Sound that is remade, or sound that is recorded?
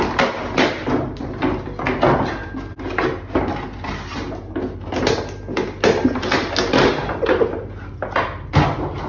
recorded